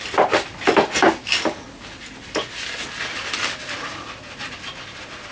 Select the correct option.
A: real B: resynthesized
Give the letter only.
A